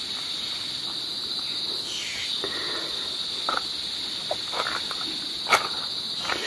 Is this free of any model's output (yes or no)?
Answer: yes